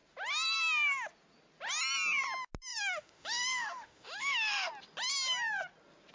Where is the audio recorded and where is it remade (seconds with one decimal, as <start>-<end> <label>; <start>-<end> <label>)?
0.0-2.7 recorded; 2.7-4.7 remade; 4.7-6.1 recorded